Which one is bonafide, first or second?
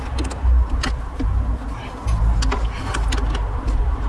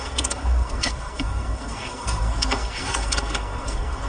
first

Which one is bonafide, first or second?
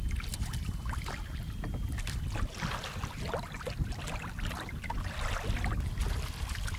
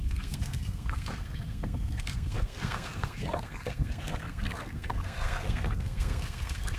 first